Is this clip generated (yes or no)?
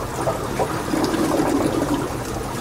no